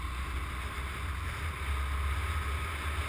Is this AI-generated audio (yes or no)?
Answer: no